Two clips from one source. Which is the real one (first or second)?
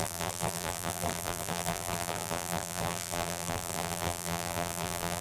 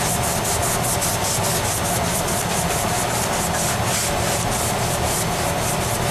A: second